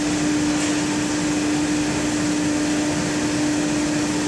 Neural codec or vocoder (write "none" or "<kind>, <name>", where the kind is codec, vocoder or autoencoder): none